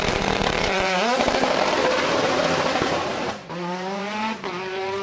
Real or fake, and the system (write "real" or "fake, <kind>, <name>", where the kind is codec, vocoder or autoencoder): fake, vocoder, BigVGAN v2